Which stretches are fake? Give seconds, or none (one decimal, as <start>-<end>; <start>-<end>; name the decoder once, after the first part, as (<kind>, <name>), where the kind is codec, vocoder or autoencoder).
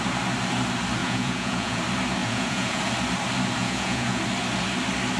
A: 1.0-1.8 (vocoder, Vocos); 2.2-2.8; 3.6-4.2